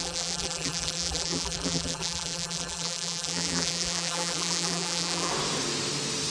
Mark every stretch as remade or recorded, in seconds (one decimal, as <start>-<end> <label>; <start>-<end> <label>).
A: 0.0-5.3 remade; 5.3-6.3 recorded